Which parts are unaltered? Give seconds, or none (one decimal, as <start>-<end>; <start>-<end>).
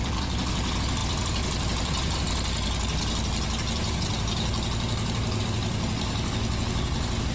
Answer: 0.0-7.3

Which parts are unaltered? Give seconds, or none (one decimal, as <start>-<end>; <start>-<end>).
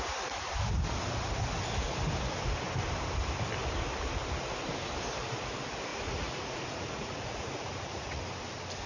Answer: 0.0-5.9; 8.2-8.9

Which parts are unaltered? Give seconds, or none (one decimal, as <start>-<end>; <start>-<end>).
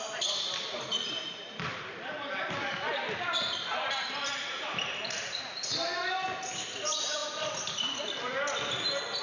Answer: 0.0-9.2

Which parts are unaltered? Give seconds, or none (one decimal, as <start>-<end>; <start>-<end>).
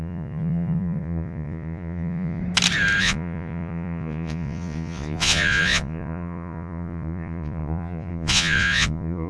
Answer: 2.4-3.0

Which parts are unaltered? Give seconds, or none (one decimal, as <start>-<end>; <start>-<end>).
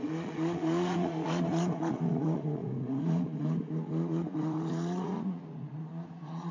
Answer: none